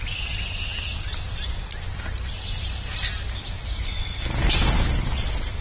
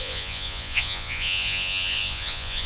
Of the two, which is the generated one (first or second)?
second